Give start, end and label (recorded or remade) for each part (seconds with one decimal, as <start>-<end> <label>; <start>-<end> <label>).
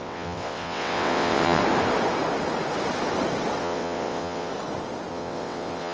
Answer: 0.0-1.6 remade; 1.6-3.6 recorded; 3.6-4.5 remade; 4.5-5.1 recorded; 5.1-5.9 remade